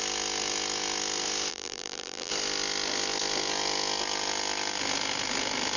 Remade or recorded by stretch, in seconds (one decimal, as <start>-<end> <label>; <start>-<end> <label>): 0.0-1.5 recorded; 1.5-2.3 remade; 2.3-5.8 recorded